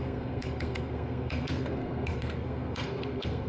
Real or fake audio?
fake